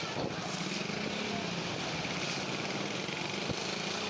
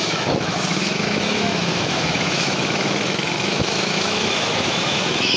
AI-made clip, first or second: second